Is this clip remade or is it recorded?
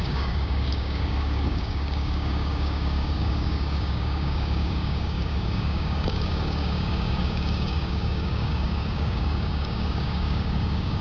remade